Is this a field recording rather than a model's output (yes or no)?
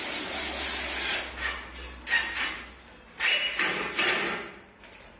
yes